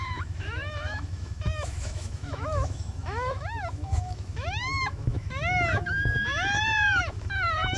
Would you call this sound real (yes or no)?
no